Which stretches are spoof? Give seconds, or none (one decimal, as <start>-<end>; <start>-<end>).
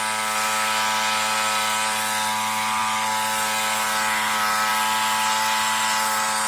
none